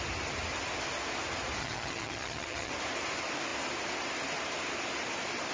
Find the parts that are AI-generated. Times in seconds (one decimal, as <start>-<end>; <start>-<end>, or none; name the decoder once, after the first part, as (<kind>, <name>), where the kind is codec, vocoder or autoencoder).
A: 1.6-2.7 (vocoder, HiFi-GAN)